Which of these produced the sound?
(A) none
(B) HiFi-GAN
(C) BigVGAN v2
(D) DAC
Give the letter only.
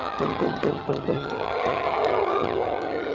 B